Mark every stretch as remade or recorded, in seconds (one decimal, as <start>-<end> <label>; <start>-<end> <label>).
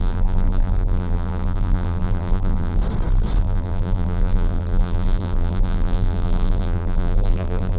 0.0-2.8 remade; 2.8-3.4 recorded; 3.4-7.8 remade